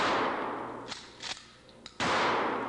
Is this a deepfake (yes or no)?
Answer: no